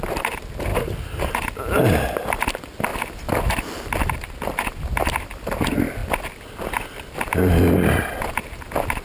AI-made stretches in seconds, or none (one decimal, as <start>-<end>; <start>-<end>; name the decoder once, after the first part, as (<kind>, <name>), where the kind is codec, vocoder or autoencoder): 0.7-1.2 (vocoder, BigVGAN v2); 2.9-4.1